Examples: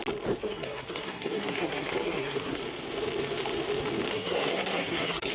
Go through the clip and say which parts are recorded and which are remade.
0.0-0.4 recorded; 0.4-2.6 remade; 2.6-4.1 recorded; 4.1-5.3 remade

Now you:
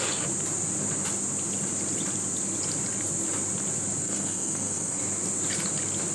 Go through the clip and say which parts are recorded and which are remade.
0.0-4.0 recorded; 4.0-5.0 remade; 5.0-6.1 recorded

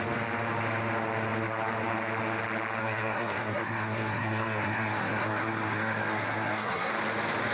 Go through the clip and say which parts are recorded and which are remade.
0.0-2.8 recorded; 2.8-6.9 remade; 6.9-7.5 recorded

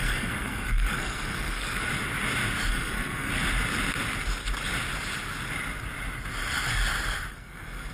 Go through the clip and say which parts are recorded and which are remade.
0.0-1.9 remade; 1.9-2.7 recorded; 2.7-3.3 remade; 3.3-7.3 recorded; 7.3-7.9 remade